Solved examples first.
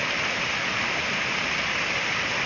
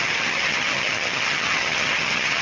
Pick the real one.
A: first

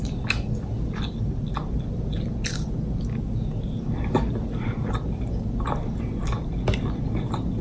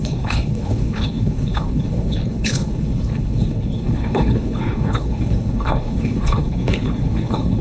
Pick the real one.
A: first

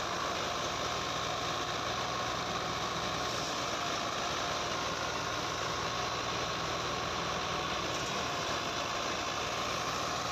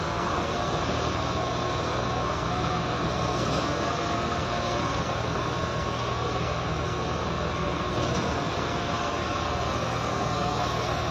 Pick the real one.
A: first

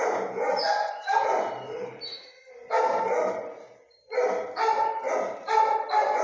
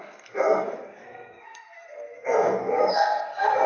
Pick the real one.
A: first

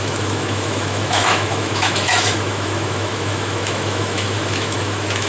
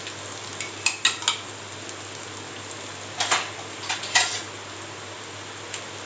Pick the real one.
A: second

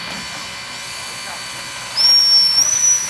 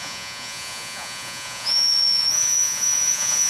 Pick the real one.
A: first